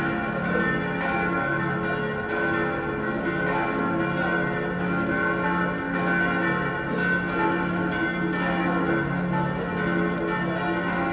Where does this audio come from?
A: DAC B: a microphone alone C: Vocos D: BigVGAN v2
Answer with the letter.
B